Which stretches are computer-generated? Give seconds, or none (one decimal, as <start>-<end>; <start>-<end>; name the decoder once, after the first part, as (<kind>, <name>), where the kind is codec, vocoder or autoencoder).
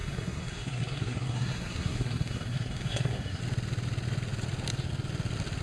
0.0-3.4 (codec, SNAC)